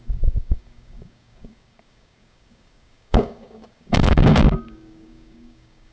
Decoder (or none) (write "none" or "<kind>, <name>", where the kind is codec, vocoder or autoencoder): codec, DAC